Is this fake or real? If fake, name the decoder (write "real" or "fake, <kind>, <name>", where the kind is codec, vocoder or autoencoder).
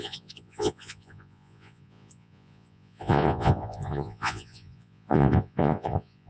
fake, vocoder, Vocos